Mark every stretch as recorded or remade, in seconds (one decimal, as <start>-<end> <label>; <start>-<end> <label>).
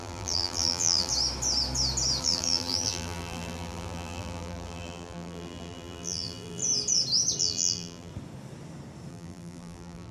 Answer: 0.0-1.1 remade; 1.1-2.2 recorded; 2.2-6.6 remade; 6.6-7.4 recorded; 7.4-8.1 remade; 8.1-9.1 recorded; 9.1-10.1 remade